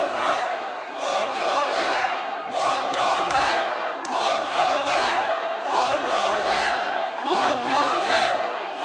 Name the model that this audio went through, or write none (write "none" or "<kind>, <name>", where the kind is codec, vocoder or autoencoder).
codec, SNAC